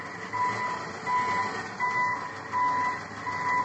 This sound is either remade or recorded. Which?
recorded